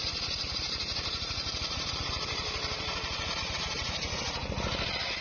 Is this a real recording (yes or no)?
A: yes